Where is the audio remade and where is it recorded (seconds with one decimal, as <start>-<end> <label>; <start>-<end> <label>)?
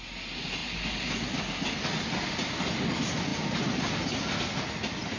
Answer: 0.0-5.2 recorded